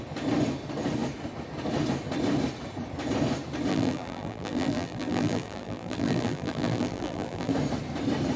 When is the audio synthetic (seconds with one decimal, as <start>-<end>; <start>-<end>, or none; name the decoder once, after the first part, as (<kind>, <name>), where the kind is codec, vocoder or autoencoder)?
3.7-7.5 (vocoder, BigVGAN v2)